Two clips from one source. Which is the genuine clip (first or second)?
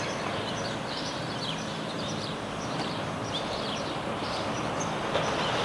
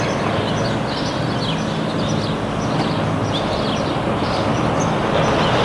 second